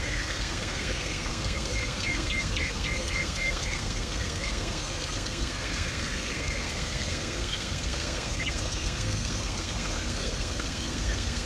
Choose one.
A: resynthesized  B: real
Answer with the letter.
A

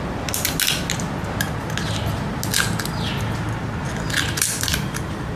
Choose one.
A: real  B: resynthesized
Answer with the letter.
A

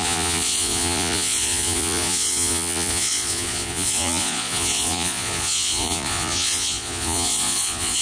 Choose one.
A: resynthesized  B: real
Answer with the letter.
A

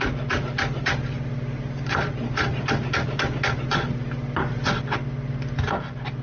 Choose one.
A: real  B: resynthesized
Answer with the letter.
A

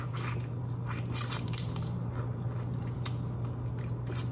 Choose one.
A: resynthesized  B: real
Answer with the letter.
B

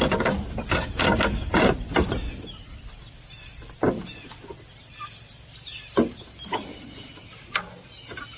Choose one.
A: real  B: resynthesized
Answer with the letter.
A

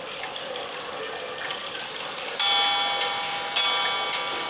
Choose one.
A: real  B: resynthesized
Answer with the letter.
A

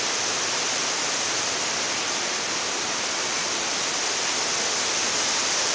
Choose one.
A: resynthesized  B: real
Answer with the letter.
B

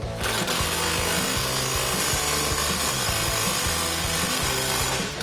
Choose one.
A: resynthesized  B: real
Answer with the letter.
B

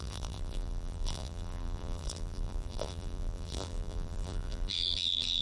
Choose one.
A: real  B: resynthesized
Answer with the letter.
B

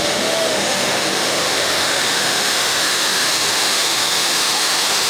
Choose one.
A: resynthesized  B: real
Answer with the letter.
A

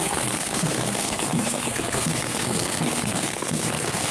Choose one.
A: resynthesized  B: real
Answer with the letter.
A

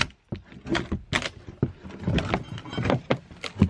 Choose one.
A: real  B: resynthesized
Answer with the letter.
A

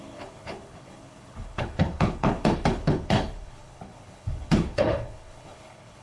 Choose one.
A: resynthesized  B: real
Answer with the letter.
A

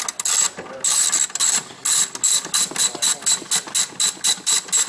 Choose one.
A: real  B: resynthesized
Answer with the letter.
A